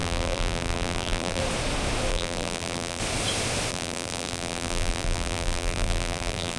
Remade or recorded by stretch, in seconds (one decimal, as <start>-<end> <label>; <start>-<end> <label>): 0.0-1.4 remade; 1.4-2.1 recorded; 2.1-3.0 remade; 3.0-3.7 recorded; 3.7-6.6 remade